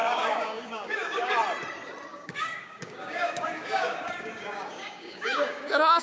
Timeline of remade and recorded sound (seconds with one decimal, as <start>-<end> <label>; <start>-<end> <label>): 0.0-1.3 remade; 1.3-2.1 recorded; 2.1-6.0 remade